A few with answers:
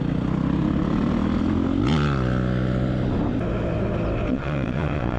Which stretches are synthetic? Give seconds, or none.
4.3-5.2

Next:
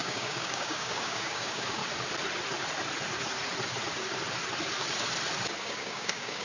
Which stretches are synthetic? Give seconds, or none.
0.0-1.8; 5.6-6.4

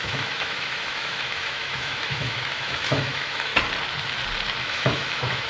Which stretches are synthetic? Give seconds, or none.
0.0-3.5; 4.6-5.5

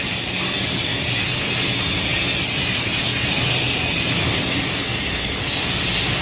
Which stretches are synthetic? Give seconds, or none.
4.6-5.4